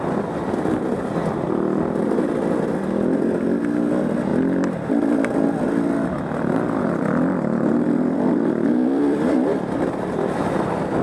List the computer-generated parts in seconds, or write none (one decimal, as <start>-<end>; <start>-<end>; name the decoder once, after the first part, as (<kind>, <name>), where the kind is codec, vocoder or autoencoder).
4.3-9.3 (vocoder, BigVGAN v2)